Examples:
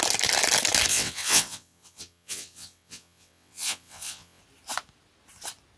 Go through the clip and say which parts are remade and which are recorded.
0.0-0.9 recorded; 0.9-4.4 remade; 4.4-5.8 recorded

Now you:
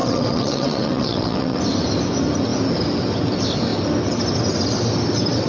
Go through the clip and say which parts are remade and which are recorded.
0.0-1.6 remade; 1.6-5.5 recorded

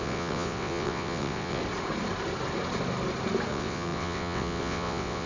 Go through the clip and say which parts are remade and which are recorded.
0.0-1.6 remade; 1.6-3.5 recorded; 3.5-5.3 remade

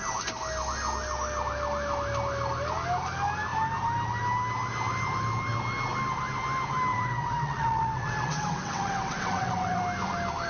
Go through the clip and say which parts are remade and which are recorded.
0.0-6.9 recorded; 6.9-9.8 remade; 9.8-10.5 recorded

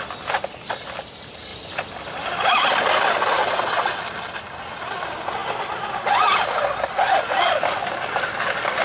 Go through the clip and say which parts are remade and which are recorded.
0.0-3.4 recorded; 3.4-4.0 remade; 4.0-8.8 recorded

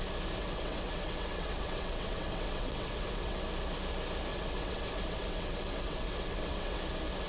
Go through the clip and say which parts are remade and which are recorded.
0.0-0.4 recorded; 0.4-3.4 remade; 3.4-4.3 recorded; 4.3-6.8 remade; 6.8-7.3 recorded